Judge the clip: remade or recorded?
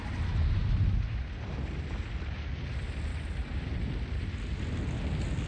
recorded